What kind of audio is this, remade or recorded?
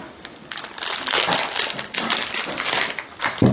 recorded